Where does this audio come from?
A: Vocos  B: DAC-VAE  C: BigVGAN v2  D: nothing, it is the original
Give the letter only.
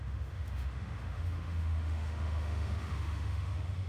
B